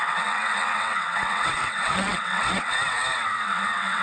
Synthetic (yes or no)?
yes